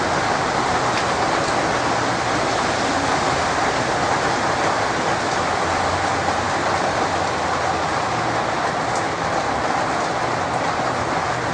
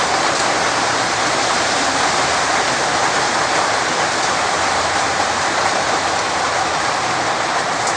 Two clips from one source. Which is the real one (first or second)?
first